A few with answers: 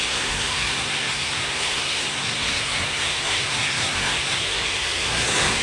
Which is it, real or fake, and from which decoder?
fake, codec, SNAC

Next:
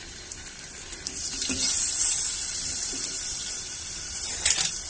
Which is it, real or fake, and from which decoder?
fake, vocoder, BigVGAN v2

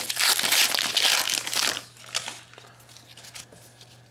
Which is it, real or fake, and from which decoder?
real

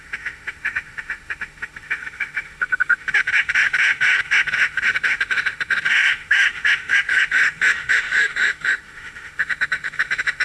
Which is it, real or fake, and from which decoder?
fake, autoencoder, DAC-VAE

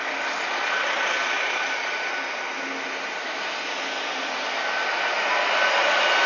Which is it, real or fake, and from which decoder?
real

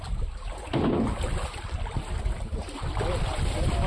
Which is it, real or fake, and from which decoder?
real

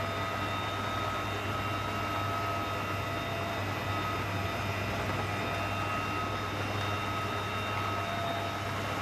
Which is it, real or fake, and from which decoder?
real